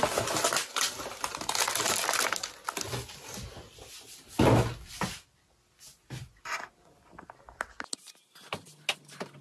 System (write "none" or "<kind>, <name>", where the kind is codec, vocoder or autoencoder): none